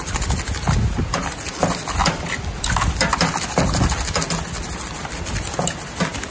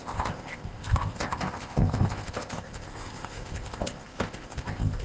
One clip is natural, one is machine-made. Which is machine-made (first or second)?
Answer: second